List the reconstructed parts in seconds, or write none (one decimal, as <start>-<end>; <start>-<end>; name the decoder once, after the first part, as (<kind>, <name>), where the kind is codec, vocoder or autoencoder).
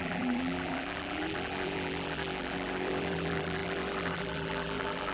0.0-5.1 (vocoder, BigVGAN v2)